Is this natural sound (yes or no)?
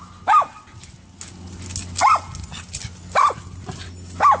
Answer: yes